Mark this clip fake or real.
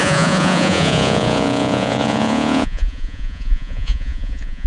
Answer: fake